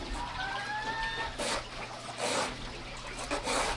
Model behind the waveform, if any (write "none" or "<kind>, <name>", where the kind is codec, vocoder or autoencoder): none